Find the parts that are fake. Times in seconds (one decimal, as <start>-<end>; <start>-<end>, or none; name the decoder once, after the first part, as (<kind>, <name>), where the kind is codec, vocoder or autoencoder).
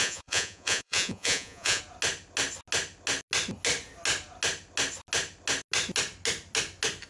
0.0-1.8 (vocoder, Vocos)